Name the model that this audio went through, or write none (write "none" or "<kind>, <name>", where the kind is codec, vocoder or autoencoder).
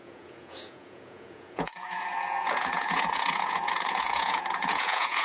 vocoder, Vocos